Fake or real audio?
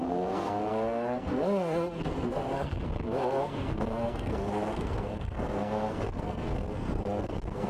fake